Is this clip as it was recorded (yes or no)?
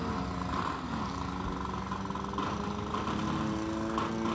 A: yes